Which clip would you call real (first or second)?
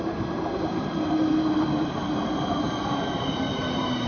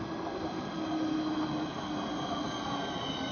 second